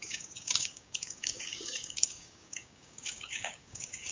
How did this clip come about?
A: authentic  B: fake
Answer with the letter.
B